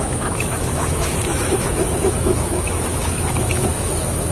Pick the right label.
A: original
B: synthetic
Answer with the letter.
B